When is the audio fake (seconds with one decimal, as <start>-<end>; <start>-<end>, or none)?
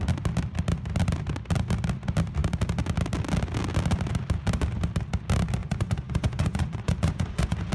5.6-7.7